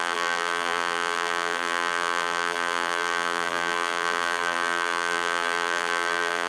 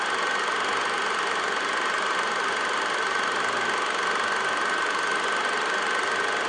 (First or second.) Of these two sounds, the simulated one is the first